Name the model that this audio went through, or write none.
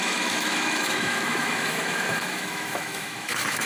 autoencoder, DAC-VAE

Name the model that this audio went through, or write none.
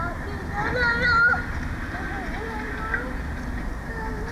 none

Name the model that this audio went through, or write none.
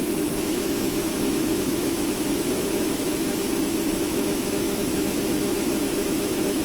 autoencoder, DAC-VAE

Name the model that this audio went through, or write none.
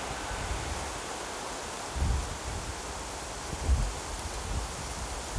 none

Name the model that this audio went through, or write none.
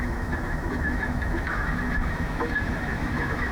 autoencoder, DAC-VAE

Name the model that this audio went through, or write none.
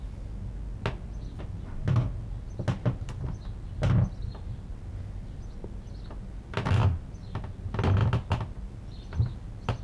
none